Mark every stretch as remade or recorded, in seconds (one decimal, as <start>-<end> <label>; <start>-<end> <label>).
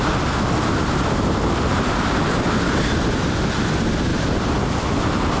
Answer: 0.0-5.4 recorded